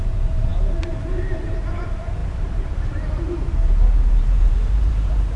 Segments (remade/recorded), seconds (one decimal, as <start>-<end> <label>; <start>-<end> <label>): 0.0-5.4 remade